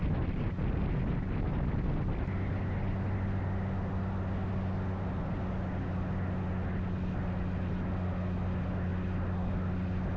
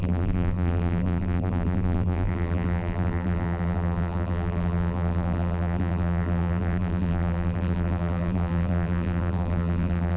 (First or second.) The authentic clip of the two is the first